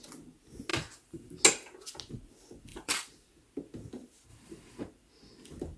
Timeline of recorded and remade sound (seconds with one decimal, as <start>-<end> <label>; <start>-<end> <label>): 0.0-0.7 recorded; 0.7-1.3 remade; 1.3-2.7 recorded; 2.7-3.3 remade; 3.3-4.3 recorded; 4.3-4.8 remade; 4.8-5.8 recorded